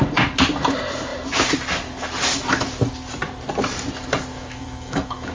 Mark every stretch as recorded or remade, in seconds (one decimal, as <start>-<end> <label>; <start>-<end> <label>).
0.0-4.3 recorded; 4.3-5.3 remade